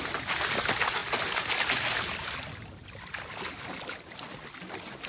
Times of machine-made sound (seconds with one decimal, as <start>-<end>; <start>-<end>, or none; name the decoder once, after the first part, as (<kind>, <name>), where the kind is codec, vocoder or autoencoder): none